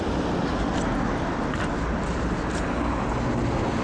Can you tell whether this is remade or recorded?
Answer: recorded